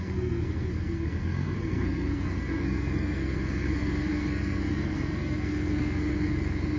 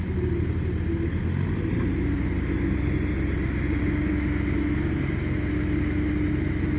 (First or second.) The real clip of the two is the second